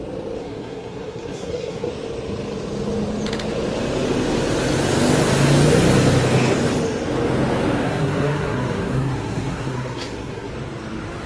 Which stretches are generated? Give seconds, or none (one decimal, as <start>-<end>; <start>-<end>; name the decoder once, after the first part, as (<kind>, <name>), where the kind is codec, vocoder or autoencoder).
0.4-1.9 (codec, SNAC); 7.8-10.5